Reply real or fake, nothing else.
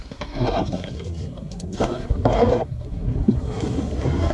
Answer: fake